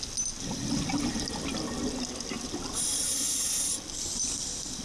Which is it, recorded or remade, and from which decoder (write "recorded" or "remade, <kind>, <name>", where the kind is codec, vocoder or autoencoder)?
recorded